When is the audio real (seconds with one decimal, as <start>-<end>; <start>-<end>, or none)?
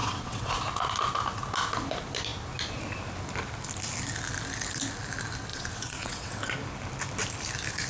0.5-5.5; 6.4-7.9